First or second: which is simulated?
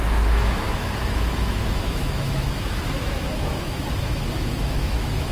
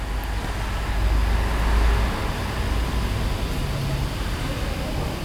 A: first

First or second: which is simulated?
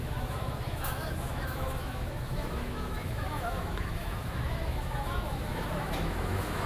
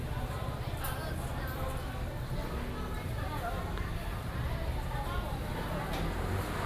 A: first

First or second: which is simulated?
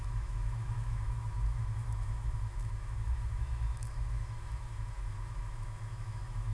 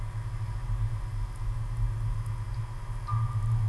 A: first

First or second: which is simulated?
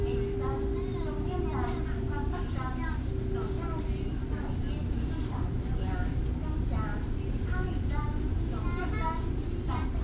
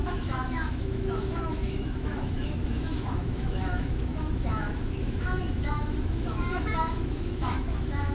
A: second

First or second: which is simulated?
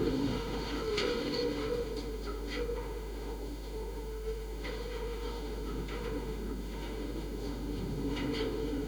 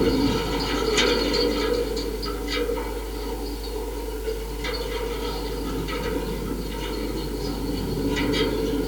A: first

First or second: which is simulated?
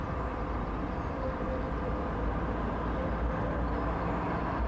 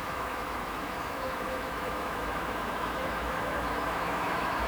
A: second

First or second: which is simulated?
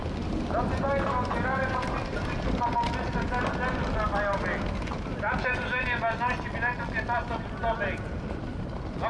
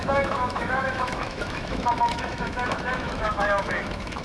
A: second